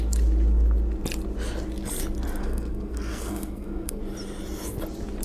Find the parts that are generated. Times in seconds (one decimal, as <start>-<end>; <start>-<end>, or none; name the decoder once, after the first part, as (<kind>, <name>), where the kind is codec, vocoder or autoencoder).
2.4-4.0 (codec, SNAC)